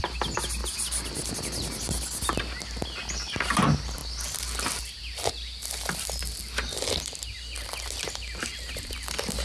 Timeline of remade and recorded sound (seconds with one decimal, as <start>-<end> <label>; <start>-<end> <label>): 0.0-9.4 recorded